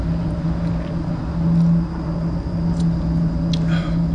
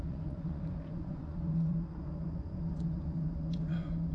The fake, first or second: second